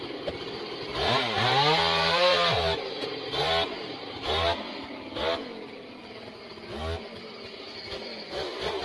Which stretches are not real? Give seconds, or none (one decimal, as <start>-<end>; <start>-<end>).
0.9-5.0